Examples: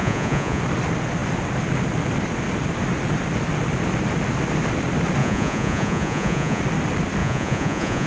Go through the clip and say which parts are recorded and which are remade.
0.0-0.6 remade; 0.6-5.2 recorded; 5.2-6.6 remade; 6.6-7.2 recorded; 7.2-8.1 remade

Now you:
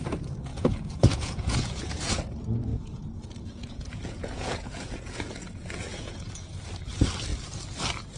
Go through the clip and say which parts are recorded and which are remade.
0.0-0.5 recorded; 0.5-2.1 remade; 2.1-2.7 recorded; 2.7-6.2 remade; 6.2-8.2 recorded

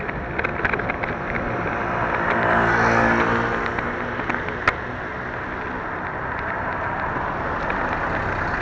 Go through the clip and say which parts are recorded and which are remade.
0.0-8.6 recorded

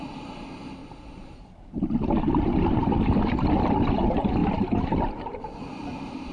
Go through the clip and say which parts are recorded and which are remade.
0.0-0.8 recorded; 0.8-3.8 remade; 3.8-4.4 recorded; 4.4-6.3 remade

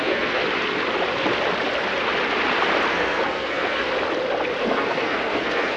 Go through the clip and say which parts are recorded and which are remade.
0.0-0.4 remade; 0.4-2.9 recorded; 2.9-3.8 remade; 3.8-4.6 recorded; 4.6-5.8 remade

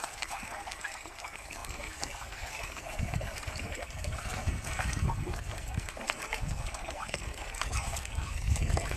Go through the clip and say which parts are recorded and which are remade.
0.0-9.0 remade